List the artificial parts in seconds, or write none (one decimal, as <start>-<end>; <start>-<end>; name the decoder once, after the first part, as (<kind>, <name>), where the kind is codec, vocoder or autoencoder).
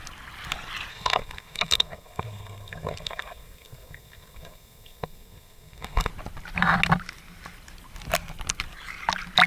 0.9-6.1 (codec, SNAC)